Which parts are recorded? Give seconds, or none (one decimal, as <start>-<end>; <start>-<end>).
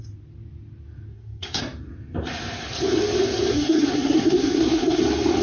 0.0-1.1; 1.6-3.5; 5.0-5.4